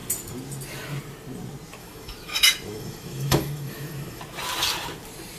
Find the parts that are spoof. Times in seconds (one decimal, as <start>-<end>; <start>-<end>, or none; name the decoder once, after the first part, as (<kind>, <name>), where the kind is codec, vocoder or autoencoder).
1.8-4.2 (autoencoder, DAC-VAE)